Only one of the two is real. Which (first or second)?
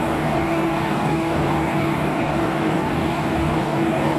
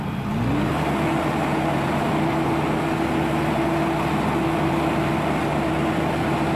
second